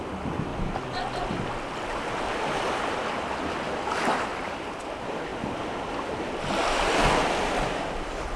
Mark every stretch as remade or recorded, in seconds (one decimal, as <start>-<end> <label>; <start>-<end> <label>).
0.0-8.4 recorded

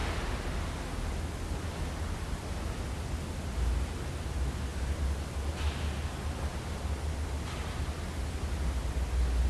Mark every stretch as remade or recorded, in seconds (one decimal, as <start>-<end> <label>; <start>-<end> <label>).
0.0-6.5 recorded; 6.5-7.4 remade; 7.4-9.5 recorded